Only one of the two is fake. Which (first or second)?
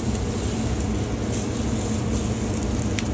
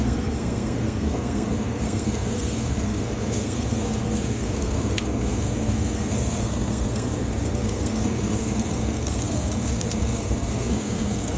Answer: second